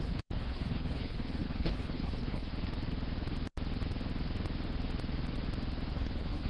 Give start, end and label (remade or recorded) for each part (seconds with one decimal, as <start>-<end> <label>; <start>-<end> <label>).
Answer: 0.0-2.5 remade; 2.5-5.9 recorded; 5.9-6.5 remade